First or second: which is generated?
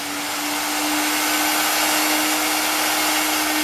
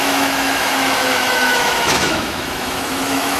second